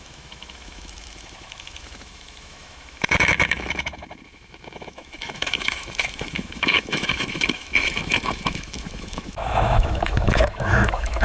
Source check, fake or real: fake